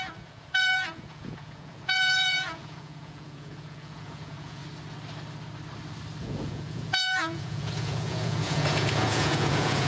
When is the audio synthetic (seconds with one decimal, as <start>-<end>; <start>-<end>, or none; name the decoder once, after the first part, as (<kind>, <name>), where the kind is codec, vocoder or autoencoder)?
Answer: 0.0-4.6 (vocoder, Vocos); 6.2-9.9